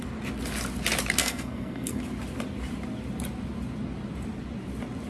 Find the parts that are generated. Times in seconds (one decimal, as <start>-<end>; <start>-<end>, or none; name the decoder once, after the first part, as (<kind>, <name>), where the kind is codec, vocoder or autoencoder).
1.2-2.0 (codec, SNAC)